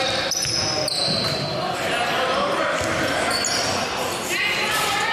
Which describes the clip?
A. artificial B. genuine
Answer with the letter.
B